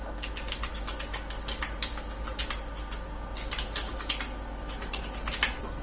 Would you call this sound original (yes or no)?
yes